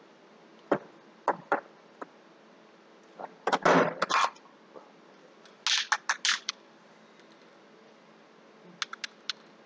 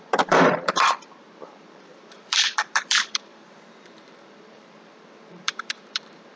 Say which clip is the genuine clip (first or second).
first